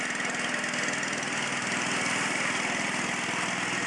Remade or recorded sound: recorded